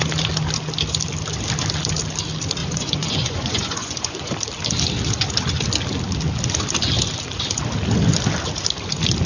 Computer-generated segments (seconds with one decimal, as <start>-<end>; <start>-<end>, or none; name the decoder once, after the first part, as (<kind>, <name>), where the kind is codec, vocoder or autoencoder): 2.6-4.3 (vocoder, Vocos)